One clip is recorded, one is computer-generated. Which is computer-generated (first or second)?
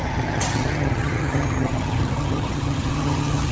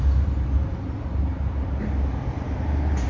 first